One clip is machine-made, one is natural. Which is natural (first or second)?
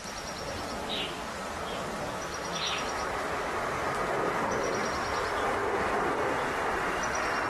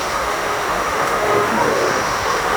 first